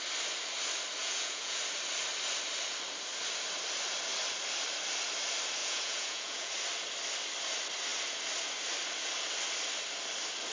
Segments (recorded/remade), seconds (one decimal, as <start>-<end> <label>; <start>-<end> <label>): 0.0-1.0 recorded; 1.0-1.6 remade; 1.6-5.6 recorded; 5.6-6.5 remade; 6.5-10.5 recorded